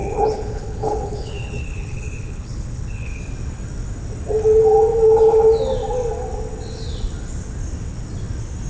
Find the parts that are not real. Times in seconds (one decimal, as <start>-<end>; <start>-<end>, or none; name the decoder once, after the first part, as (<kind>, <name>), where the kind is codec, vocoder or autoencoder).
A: 0.0-3.2 (codec, HILCodec)